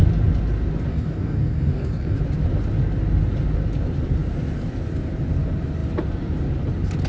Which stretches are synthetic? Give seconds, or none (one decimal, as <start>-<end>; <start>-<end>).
0.9-2.2